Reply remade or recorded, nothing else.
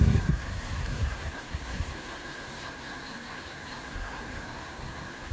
remade